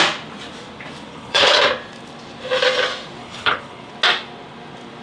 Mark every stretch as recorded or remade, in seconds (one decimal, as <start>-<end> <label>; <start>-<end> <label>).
0.0-1.1 recorded; 1.1-1.6 remade; 1.6-3.2 recorded; 3.2-3.9 remade; 3.9-5.0 recorded